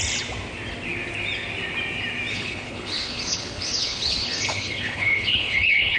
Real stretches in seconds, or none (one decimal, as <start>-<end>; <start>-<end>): 0.0-2.3